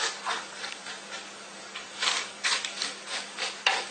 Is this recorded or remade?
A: remade